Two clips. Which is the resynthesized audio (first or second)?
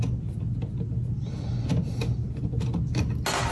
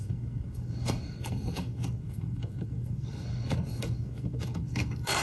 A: second